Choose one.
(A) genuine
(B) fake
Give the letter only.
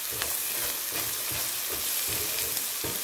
A